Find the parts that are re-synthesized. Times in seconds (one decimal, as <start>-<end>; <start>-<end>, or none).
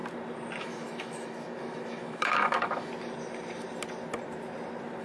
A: 0.6-2.9